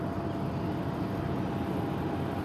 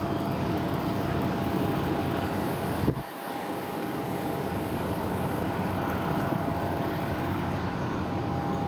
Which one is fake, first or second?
second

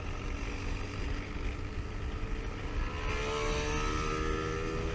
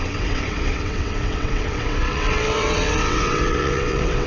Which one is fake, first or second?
second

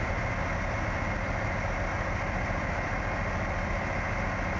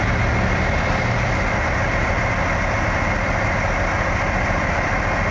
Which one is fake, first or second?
second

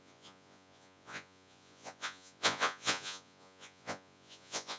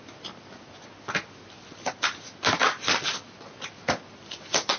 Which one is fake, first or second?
first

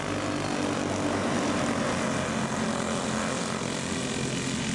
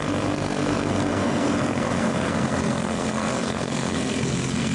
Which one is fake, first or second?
second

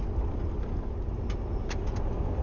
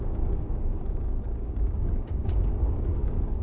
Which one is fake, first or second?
second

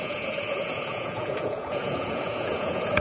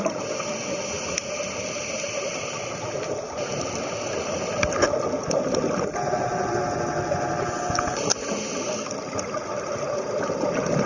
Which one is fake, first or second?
first